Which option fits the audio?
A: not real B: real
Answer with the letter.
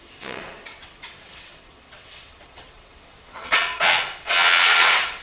A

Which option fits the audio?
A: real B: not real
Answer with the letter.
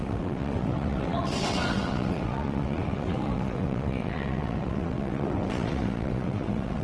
B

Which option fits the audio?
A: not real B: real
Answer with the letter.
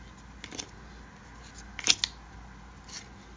B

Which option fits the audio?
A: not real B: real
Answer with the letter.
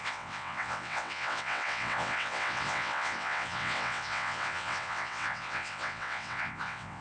A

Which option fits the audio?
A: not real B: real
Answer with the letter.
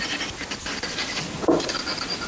B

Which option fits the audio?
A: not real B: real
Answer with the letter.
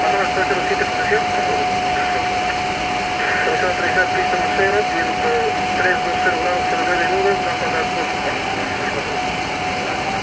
B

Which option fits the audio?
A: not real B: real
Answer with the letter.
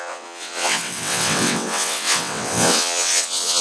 A